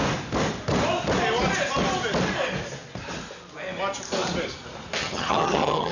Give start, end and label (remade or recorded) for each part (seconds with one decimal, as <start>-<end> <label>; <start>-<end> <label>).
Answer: 0.0-5.0 recorded; 5.0-5.9 remade